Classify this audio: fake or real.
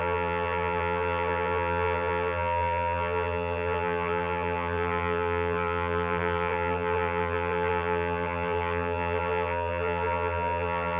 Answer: fake